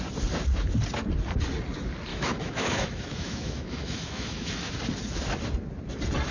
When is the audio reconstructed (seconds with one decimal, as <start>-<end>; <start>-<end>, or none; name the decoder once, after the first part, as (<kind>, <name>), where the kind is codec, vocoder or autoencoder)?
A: 2.1-4.7 (autoencoder, DAC-VAE)